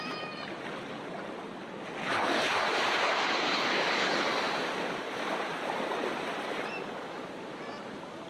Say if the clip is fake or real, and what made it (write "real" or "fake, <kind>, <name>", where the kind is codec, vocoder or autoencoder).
real